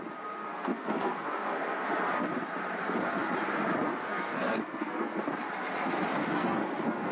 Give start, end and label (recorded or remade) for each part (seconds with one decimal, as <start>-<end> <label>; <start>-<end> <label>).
0.0-0.4 recorded; 0.4-2.2 remade; 2.2-3.9 recorded; 3.9-5.2 remade; 5.2-6.2 recorded; 6.2-7.1 remade